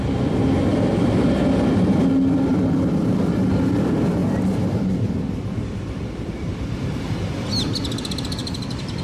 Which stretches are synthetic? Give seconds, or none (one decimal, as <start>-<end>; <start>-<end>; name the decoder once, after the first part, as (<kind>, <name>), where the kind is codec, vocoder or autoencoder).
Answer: 0.7-2.0 (vocoder, BigVGAN v2); 4.2-7.1; 8.4-9.0